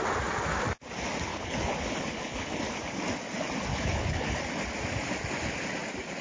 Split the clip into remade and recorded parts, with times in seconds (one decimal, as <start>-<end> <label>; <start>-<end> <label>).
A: 0.0-1.3 recorded; 1.3-2.6 remade; 2.6-3.7 recorded; 3.7-4.4 remade; 4.4-6.2 recorded